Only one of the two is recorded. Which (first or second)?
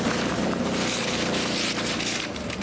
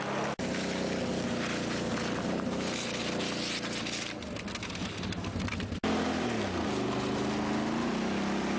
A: second